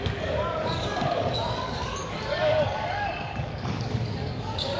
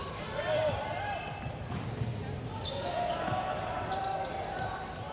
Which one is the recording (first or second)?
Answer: second